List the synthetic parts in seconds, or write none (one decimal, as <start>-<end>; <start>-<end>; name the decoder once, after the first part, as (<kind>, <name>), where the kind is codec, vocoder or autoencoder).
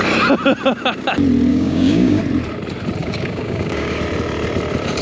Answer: 1.5-2.2 (codec, DAC); 3.0-4.0